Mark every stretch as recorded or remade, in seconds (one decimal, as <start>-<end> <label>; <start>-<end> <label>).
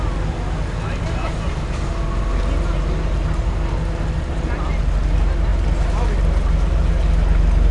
0.0-7.7 recorded